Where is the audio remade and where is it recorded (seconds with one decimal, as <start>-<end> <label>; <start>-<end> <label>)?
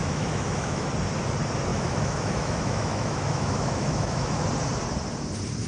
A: 0.0-0.9 remade; 0.9-1.7 recorded; 1.7-4.4 remade; 4.4-5.7 recorded